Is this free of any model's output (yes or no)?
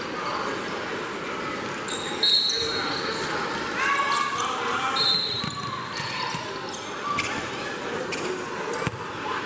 yes